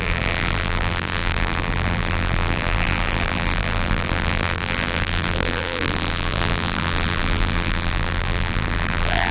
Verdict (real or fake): fake